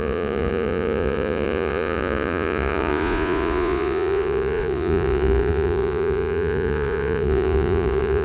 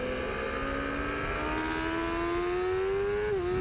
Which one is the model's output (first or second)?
first